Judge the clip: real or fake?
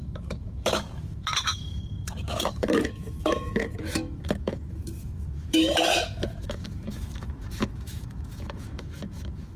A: fake